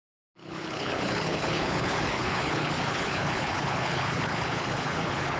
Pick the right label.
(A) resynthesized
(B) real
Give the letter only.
A